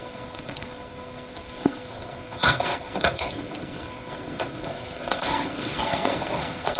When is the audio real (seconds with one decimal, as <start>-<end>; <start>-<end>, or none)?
none